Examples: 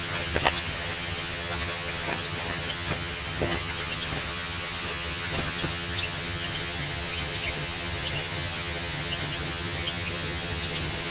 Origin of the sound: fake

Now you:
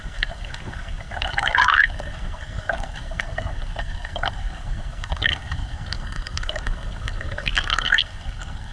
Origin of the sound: fake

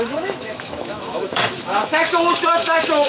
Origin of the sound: fake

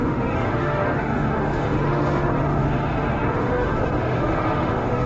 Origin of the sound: fake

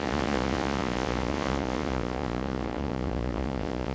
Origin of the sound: fake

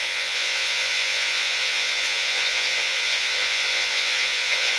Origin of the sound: fake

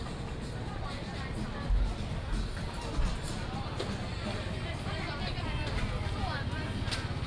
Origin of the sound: real